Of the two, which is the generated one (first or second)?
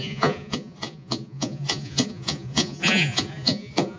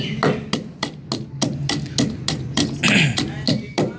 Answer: first